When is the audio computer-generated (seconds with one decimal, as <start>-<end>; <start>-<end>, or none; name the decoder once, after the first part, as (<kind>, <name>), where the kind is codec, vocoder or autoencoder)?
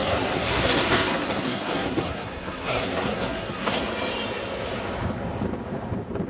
0.0-3.8 (codec, SNAC)